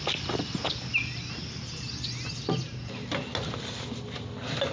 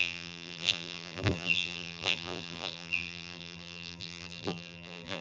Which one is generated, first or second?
second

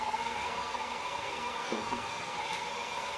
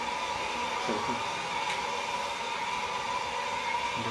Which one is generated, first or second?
first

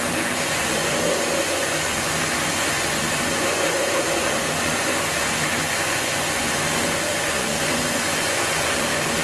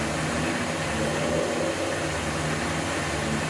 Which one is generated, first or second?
first